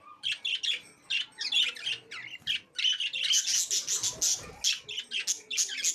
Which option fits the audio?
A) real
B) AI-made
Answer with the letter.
A